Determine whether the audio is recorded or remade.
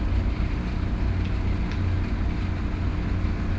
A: recorded